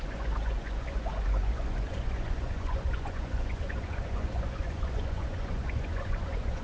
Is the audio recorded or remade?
remade